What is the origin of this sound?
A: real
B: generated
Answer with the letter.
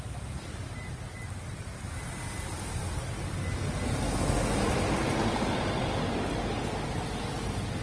A